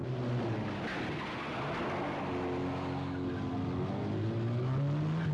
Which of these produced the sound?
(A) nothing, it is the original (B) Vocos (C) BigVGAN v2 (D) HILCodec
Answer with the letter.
A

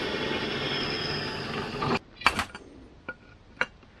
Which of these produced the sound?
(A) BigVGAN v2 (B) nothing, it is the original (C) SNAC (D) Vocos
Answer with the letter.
B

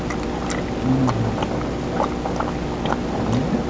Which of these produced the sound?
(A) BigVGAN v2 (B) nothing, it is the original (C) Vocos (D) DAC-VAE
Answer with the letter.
B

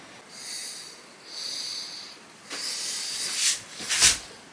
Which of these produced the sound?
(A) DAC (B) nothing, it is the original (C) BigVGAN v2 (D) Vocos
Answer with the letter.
B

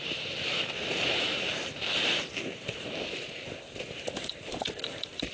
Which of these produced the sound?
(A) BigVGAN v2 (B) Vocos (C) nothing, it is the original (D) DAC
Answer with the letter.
A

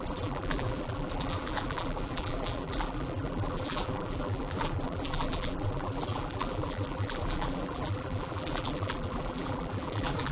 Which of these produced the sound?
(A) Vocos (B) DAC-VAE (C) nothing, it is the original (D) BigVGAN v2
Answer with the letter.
D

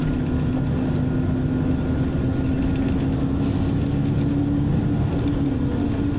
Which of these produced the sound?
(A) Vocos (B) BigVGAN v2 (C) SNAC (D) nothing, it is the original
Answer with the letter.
D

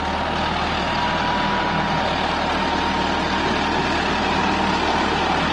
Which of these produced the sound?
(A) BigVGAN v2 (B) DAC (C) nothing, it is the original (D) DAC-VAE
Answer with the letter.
C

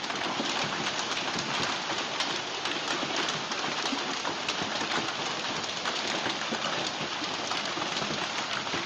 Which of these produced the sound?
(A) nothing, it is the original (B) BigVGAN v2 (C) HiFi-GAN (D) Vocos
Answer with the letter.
A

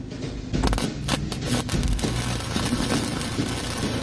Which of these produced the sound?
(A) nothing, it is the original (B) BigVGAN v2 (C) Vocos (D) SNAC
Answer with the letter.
A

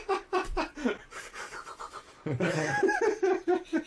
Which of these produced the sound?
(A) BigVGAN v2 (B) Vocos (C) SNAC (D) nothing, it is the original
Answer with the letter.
A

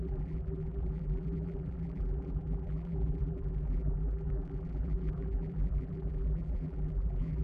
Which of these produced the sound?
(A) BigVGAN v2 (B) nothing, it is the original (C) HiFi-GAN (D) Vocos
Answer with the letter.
A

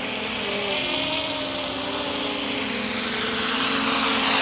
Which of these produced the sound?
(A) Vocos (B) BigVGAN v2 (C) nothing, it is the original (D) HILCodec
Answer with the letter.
C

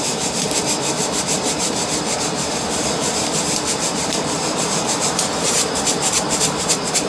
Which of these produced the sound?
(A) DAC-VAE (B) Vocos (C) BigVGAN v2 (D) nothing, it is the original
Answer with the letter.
C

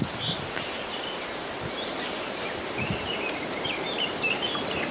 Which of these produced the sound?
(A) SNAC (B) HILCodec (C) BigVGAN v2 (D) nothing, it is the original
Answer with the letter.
C